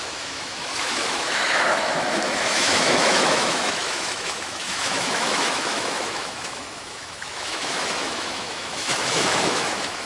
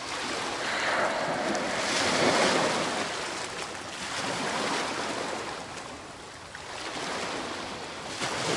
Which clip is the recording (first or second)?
second